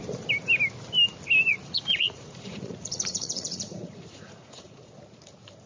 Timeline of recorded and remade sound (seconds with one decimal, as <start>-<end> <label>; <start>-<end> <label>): 0.0-1.5 recorded; 1.5-4.9 remade; 4.9-5.7 recorded